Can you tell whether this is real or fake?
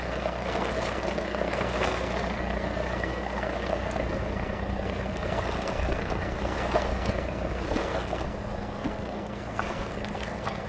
fake